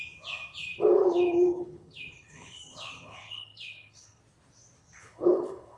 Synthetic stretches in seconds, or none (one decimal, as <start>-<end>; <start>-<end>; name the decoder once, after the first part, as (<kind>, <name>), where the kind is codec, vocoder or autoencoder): 0.7-4.2 (codec, HILCodec); 4.8-5.8